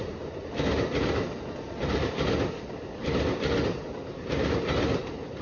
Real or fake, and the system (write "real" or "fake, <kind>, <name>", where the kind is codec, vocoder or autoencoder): real